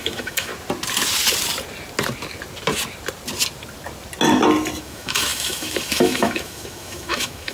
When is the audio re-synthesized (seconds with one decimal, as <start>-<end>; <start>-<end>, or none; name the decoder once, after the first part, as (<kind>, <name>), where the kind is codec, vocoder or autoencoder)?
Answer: 0.0-0.5 (autoencoder, DAC-VAE); 4.8-7.5